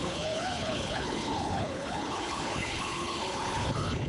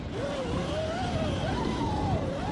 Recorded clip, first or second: second